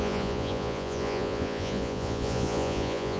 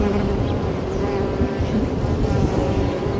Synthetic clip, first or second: first